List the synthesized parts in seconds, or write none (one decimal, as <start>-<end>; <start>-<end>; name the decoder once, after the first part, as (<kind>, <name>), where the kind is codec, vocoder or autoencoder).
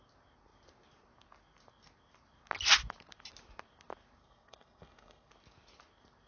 4.2-5.3 (codec, SNAC)